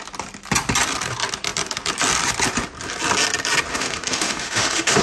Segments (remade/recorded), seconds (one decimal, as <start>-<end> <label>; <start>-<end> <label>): 0.0-3.7 recorded; 3.7-5.0 remade